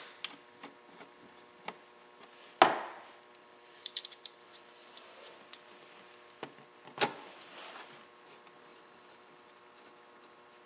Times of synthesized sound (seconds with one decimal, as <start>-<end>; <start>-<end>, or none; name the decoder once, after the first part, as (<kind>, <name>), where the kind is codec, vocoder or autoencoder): 3.4-5.3 (vocoder, BigVGAN v2); 8.7-9.3